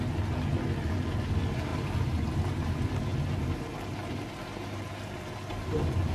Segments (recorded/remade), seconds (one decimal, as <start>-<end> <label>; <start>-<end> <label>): 0.0-1.7 recorded; 1.7-2.3 remade; 2.3-6.1 recorded